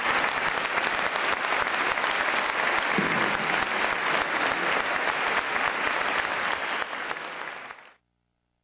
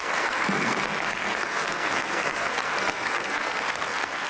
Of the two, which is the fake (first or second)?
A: second